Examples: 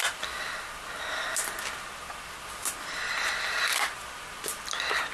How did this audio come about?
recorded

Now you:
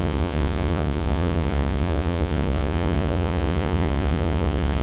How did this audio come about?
remade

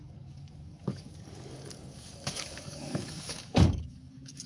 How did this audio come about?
remade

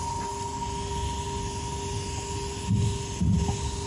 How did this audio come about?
recorded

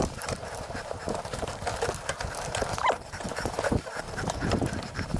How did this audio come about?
remade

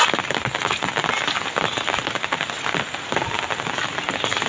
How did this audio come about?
recorded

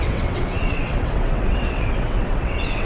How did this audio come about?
remade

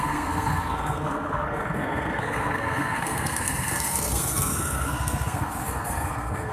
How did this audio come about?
remade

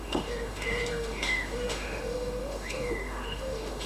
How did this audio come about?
remade